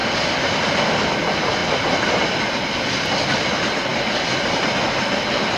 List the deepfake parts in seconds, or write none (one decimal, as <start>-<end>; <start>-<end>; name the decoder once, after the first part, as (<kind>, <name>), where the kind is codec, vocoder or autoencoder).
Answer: none